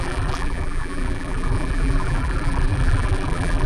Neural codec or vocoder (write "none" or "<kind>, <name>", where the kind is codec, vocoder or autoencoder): vocoder, BigVGAN v2